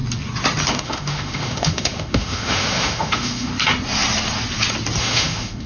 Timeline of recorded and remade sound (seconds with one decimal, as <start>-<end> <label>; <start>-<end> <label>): 0.0-0.7 recorded; 0.7-3.5 remade; 3.5-5.0 recorded; 5.0-5.7 remade